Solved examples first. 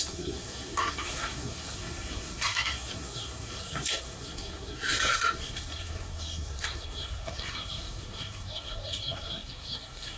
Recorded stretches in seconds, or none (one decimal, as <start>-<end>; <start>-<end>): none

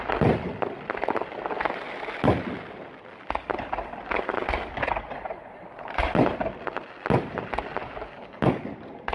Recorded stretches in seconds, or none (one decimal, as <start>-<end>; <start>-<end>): 0.0-7.8; 8.6-9.1

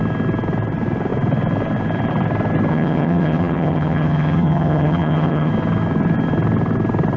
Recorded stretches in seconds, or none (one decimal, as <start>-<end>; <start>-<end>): 0.0-2.7; 5.5-7.2

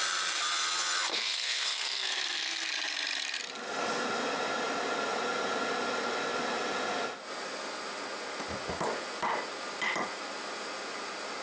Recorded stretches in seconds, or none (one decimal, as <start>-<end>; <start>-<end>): 0.0-1.1; 2.7-11.4

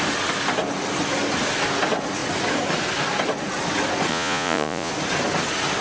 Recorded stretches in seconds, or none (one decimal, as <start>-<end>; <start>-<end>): 0.0-4.1; 4.9-5.8

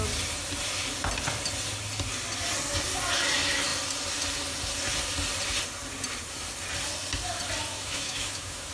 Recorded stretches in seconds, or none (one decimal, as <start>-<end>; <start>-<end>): 0.0-7.7